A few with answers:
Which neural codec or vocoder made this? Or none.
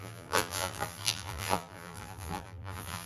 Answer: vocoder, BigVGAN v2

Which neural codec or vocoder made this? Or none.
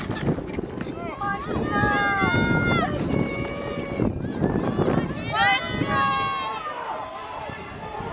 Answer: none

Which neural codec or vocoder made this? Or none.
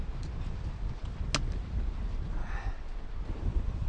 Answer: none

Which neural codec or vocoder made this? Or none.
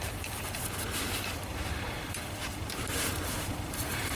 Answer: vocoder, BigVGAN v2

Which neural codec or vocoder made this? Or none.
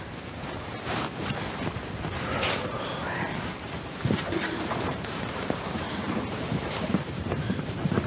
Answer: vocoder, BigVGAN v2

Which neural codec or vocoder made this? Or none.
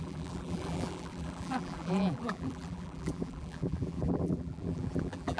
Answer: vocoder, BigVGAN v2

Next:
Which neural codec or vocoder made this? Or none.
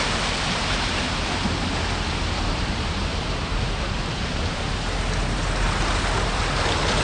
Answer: vocoder, BigVGAN v2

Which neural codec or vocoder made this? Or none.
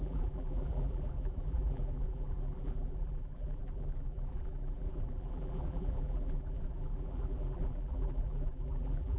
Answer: vocoder, BigVGAN v2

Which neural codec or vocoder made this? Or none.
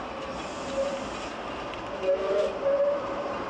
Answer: none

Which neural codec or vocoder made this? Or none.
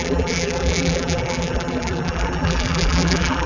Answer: vocoder, BigVGAN v2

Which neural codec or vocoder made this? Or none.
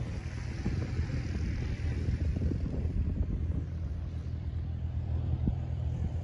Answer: vocoder, BigVGAN v2